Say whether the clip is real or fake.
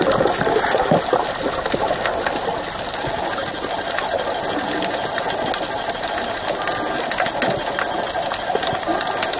real